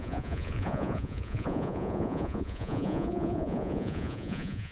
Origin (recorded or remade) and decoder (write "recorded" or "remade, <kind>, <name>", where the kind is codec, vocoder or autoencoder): remade, vocoder, Vocos